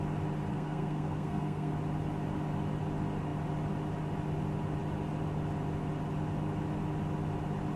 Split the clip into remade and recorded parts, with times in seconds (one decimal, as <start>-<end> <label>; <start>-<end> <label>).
0.0-0.5 recorded; 0.5-1.7 remade; 1.7-7.8 recorded